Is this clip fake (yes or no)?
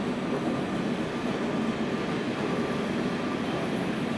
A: no